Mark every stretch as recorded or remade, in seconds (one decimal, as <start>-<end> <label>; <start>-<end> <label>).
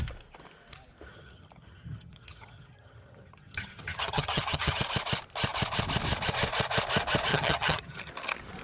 0.0-1.1 recorded; 1.1-4.8 remade; 4.8-7.3 recorded; 7.3-8.1 remade; 8.1-8.6 recorded